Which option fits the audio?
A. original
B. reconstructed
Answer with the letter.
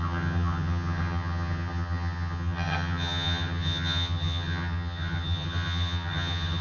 B